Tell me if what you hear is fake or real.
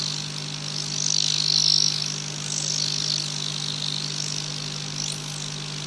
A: real